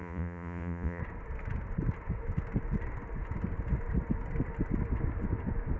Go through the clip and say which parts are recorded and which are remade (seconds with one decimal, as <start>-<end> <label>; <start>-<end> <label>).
0.0-1.0 remade; 1.0-5.8 recorded

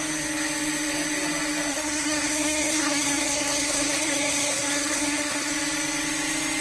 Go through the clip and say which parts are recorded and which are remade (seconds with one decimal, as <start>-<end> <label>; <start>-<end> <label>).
0.0-1.7 recorded; 1.7-5.5 remade; 5.5-6.6 recorded